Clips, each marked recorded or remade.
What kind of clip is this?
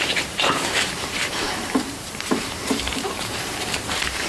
remade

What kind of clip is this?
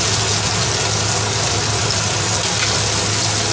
recorded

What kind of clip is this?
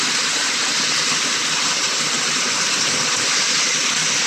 recorded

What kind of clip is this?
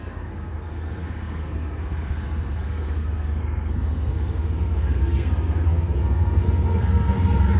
remade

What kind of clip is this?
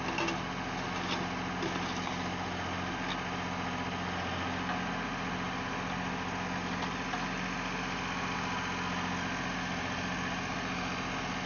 recorded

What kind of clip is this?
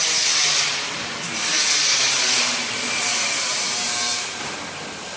recorded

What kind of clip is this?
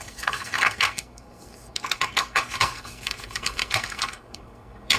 remade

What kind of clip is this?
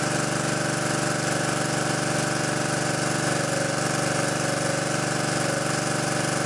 recorded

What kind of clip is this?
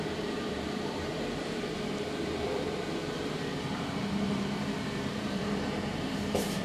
remade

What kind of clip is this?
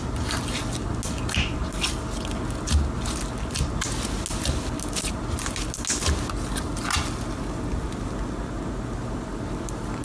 recorded